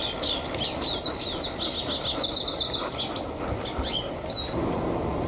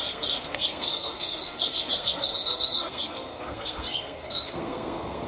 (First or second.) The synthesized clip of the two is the second